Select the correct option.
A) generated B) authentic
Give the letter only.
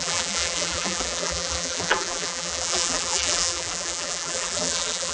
A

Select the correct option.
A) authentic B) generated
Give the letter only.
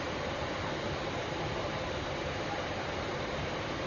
B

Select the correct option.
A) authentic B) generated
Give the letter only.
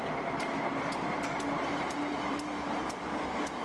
B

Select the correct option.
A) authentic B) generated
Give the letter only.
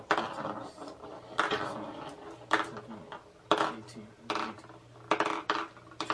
A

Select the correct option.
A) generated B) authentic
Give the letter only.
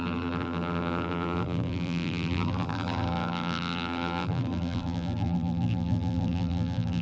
A